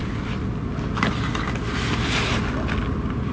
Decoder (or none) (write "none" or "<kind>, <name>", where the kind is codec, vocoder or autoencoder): none